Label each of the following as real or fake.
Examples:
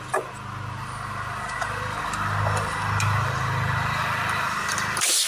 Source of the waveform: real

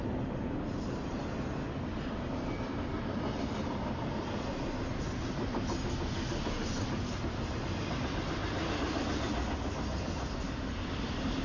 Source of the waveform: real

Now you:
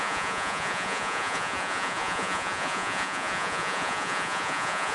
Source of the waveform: fake